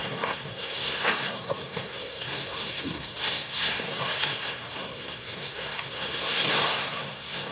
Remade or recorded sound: remade